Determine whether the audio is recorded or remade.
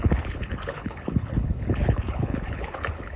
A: remade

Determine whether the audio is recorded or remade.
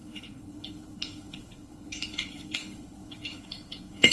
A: remade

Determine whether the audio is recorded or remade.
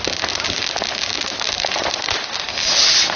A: recorded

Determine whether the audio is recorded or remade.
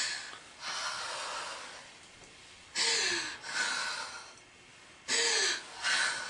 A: recorded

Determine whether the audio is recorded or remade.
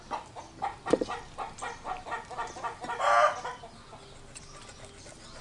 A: recorded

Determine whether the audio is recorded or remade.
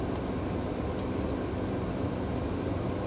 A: recorded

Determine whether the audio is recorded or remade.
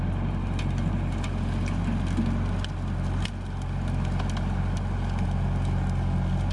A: recorded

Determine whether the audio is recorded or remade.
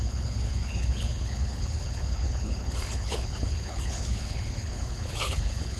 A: remade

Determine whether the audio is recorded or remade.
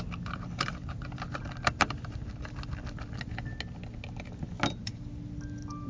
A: recorded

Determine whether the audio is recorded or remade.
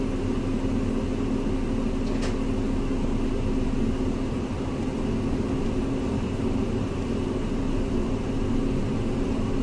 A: recorded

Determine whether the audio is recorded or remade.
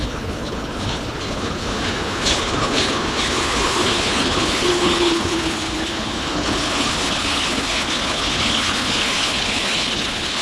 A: remade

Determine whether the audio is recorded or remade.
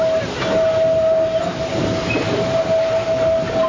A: recorded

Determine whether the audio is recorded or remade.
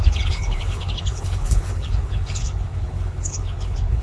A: remade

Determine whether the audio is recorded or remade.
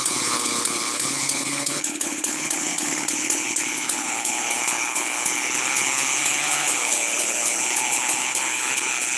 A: remade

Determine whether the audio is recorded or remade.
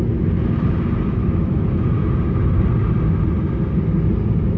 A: recorded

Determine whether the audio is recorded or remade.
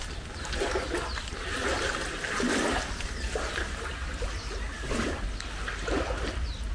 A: recorded